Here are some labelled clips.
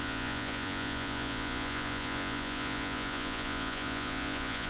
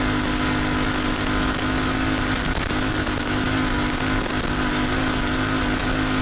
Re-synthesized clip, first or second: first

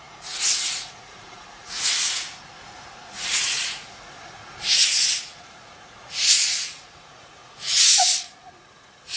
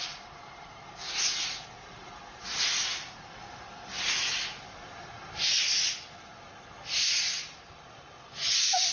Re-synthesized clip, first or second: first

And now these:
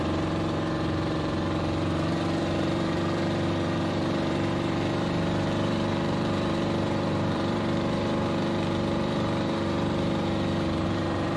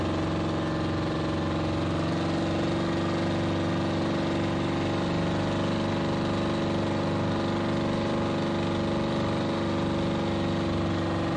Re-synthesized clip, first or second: first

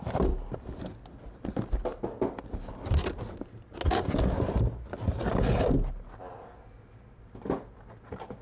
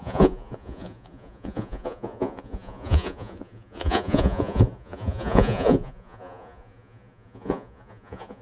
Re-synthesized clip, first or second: second